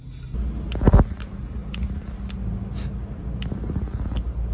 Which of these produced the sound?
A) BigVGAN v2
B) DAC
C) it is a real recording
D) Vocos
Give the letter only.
C